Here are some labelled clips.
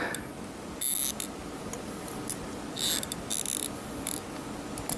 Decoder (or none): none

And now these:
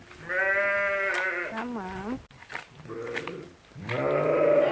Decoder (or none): none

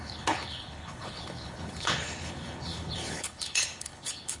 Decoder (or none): codec, HILCodec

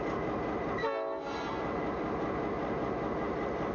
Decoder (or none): none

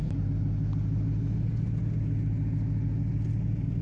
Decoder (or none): none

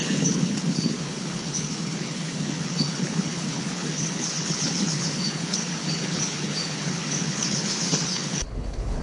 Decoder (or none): codec, HILCodec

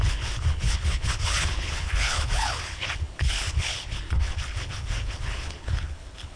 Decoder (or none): codec, HILCodec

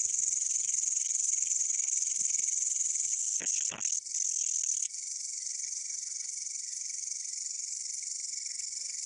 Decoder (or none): codec, HILCodec